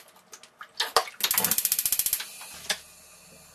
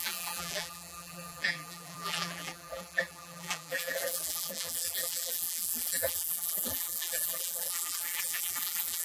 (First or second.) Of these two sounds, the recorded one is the first